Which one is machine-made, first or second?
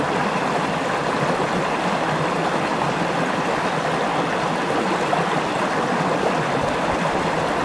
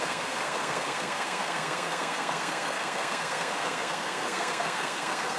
second